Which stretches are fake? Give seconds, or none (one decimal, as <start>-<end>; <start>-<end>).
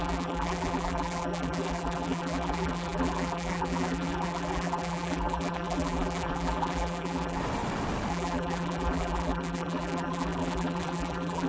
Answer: 0.0-7.4; 8.1-11.5